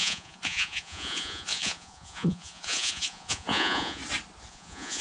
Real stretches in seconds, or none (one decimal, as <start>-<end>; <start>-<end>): 4.0-4.5

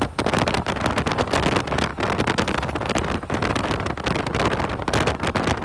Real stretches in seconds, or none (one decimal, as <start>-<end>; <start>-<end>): 0.0-5.6

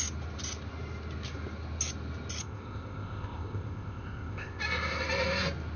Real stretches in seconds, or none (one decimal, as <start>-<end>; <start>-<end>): 0.0-2.4; 4.6-5.8